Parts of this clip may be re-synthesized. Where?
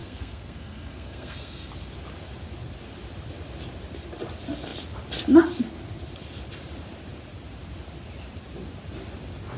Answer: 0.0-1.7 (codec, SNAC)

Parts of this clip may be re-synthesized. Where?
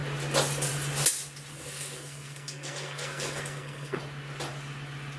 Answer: 1.5-4.0 (codec, SNAC)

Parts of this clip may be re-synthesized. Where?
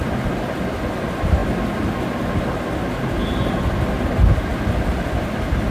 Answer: none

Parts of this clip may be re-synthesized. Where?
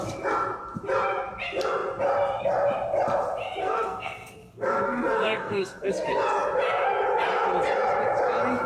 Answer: 3.6-5.9 (codec, SNAC)